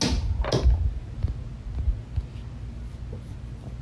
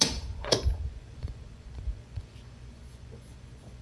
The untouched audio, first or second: first